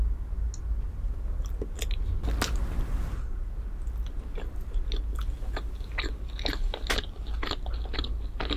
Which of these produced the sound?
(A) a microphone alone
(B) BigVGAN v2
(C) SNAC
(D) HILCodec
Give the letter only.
A